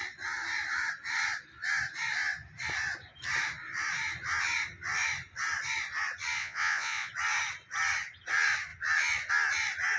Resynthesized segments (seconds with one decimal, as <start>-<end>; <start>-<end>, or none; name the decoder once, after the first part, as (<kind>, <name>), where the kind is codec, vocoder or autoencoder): 6.4-7.1 (vocoder, Vocos)